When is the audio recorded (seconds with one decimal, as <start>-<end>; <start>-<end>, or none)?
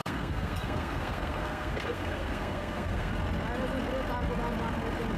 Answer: 3.1-5.2